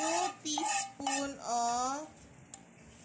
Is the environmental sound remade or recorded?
recorded